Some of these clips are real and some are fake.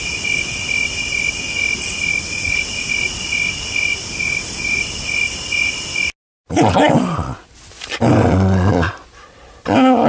real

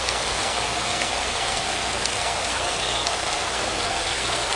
fake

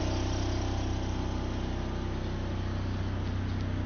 real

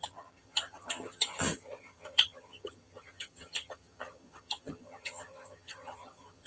fake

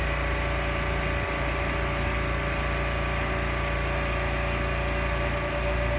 real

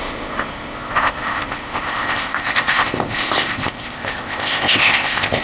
fake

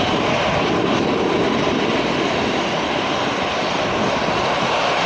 real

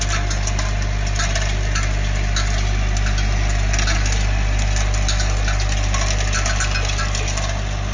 real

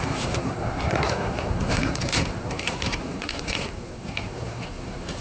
fake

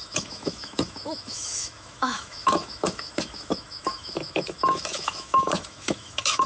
fake